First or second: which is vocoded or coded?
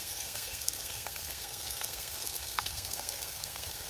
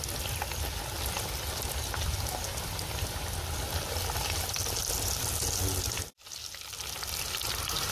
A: first